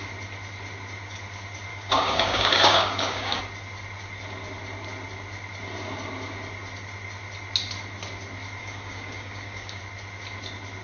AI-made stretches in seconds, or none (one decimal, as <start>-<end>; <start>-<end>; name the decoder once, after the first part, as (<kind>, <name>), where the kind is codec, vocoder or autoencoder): 1.7-3.4 (codec, DAC); 8.6-9.8